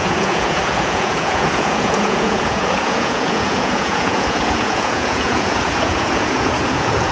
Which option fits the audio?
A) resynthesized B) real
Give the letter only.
A